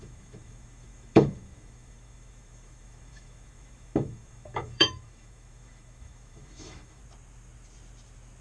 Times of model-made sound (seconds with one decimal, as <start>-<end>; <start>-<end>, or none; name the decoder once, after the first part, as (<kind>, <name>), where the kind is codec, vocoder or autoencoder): 0.0-7.0 (autoencoder, DAC-VAE)